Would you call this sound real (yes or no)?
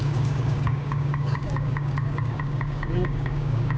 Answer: no